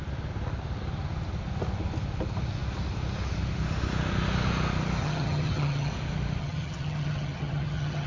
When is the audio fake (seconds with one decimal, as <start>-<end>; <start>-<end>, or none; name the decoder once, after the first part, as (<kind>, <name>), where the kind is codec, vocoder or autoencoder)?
5.0-5.9 (vocoder, HiFi-GAN); 6.4-8.1